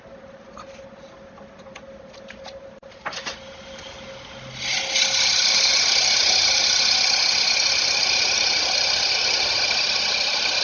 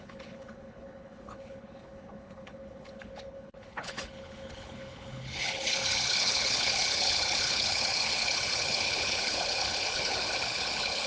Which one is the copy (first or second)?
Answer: second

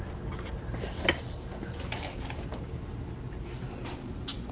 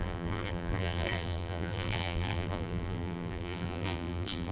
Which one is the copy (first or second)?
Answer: second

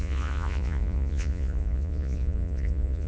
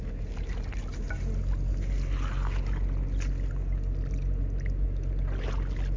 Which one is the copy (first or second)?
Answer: first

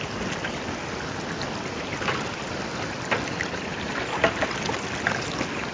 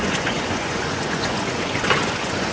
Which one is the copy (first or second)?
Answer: second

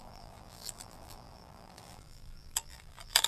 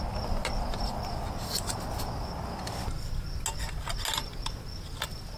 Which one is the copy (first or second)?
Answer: first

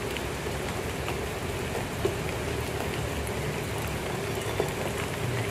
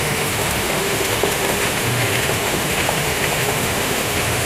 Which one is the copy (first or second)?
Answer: second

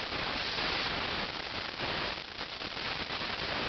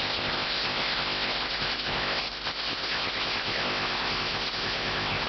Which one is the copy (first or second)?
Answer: second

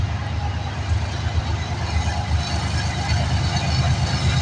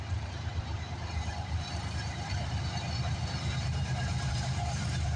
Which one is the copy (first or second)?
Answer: second